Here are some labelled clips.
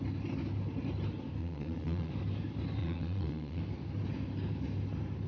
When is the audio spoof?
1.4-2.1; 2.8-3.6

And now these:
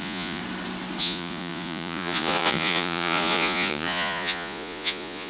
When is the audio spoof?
0.0-0.4; 1.0-5.3

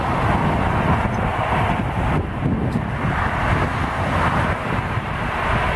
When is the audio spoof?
none

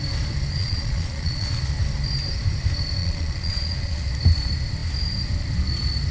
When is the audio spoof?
0.5-1.8; 3.0-4.1

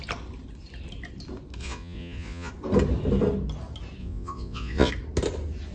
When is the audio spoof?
1.6-2.5; 4.0-4.9